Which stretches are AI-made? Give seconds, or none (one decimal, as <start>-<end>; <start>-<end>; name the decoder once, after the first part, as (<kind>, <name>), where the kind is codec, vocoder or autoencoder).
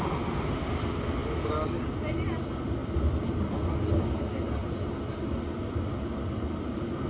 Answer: none